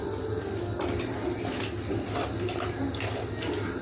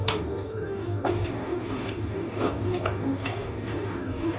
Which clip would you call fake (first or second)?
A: second